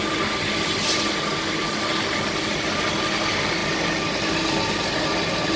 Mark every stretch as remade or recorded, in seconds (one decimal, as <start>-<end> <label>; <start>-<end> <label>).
0.0-5.6 recorded